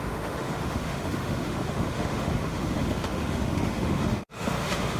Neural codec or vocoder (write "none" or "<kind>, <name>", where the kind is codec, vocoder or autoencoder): autoencoder, DAC-VAE